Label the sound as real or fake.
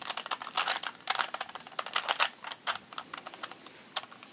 real